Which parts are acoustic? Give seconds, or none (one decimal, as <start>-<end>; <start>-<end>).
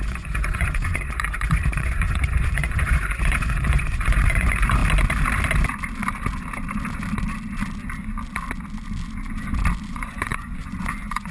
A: 4.8-9.9